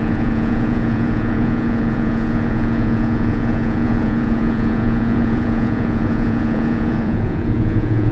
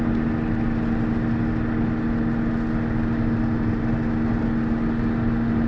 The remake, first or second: first